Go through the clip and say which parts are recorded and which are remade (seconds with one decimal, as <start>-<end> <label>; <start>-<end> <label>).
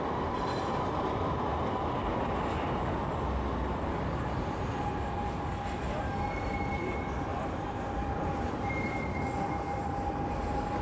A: 0.0-7.3 recorded; 7.3-10.3 remade; 10.3-10.8 recorded